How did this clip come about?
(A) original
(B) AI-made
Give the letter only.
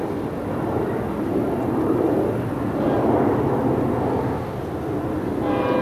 A